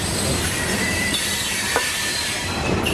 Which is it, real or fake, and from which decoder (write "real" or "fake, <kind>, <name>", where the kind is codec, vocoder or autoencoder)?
fake, vocoder, BigVGAN v2